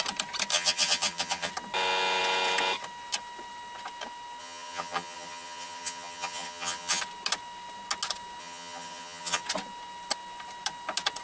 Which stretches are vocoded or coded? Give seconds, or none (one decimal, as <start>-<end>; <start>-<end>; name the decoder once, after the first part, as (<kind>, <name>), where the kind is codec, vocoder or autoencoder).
0.5-1.5 (vocoder, HiFi-GAN); 4.4-7.0; 8.4-9.4